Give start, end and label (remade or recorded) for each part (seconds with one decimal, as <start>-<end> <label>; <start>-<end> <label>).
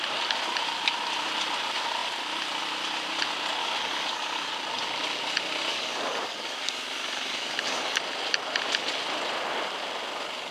0.0-3.6 recorded; 3.6-4.5 remade; 4.5-5.7 recorded; 5.7-8.0 remade; 8.0-10.5 recorded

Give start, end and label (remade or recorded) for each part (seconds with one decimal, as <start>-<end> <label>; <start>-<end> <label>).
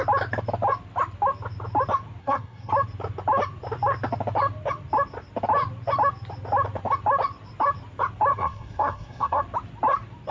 0.0-2.2 recorded; 2.2-2.7 remade; 2.7-8.3 recorded; 8.3-9.4 remade; 9.4-10.3 recorded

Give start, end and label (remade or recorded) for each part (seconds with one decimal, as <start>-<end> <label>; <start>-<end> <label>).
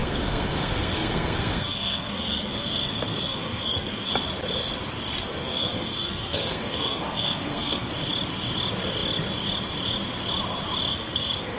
0.0-4.1 remade; 4.1-5.4 recorded; 5.4-7.9 remade; 7.9-10.9 recorded; 10.9-11.6 remade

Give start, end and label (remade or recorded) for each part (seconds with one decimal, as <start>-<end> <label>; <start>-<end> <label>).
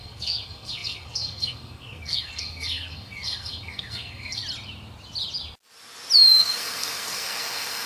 0.0-4.4 remade; 4.4-6.4 recorded; 6.4-7.9 remade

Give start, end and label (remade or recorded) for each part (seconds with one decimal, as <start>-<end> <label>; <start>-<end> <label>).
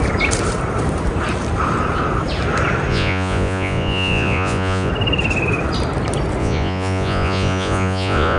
0.0-2.9 recorded; 2.9-4.9 remade; 4.9-6.4 recorded; 6.4-8.4 remade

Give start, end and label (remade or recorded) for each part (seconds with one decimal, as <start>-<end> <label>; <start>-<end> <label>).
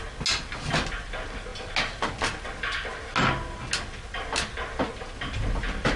0.0-6.0 recorded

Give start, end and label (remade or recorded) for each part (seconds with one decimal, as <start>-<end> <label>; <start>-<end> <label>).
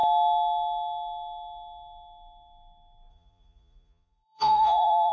0.0-3.1 recorded; 3.1-5.1 remade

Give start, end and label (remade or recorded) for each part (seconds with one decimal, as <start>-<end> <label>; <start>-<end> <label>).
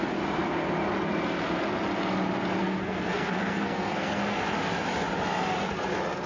0.0-2.6 recorded; 2.6-4.2 remade; 4.2-6.3 recorded